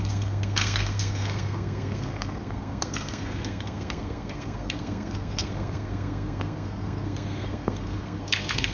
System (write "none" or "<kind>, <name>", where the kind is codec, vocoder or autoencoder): codec, SNAC